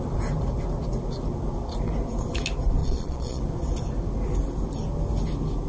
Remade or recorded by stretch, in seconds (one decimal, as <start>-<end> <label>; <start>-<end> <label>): 0.0-2.8 recorded; 2.8-3.4 remade; 3.4-5.7 recorded